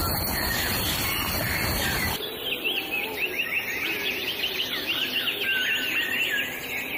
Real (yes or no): yes